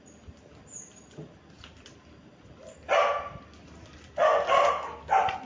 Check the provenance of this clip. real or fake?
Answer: real